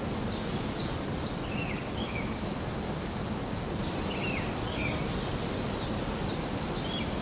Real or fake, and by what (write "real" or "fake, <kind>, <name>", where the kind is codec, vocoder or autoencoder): real